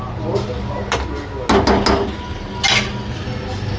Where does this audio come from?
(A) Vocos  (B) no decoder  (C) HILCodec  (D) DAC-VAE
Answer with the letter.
B